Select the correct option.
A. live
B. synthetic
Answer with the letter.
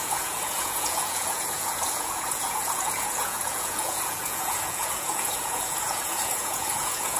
B